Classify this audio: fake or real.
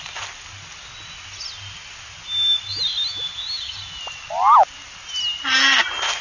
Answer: real